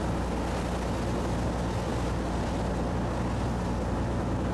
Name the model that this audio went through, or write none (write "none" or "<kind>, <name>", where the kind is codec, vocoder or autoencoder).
none